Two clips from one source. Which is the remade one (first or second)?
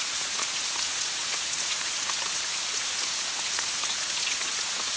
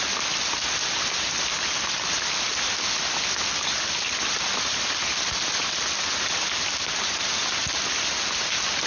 first